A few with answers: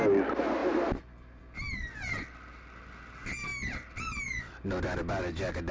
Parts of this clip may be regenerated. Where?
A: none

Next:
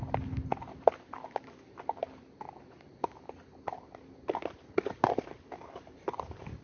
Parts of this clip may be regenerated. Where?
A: none

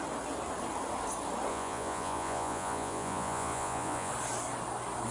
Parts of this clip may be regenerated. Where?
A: 1.5-4.1